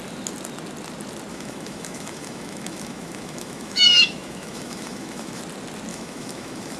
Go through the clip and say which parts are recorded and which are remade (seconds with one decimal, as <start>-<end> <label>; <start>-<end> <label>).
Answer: 0.0-1.3 recorded; 1.3-5.4 remade; 5.4-5.9 recorded; 5.9-6.8 remade